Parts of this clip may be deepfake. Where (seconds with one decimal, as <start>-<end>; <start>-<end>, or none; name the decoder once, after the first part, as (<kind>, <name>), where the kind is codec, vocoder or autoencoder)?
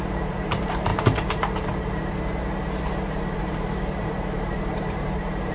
0.0-0.9 (vocoder, BigVGAN v2); 3.4-5.5